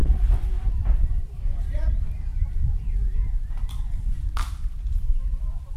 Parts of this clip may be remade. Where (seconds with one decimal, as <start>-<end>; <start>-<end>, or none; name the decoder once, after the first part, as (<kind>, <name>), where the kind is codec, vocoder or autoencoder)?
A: 0.0-2.3 (vocoder, BigVGAN v2)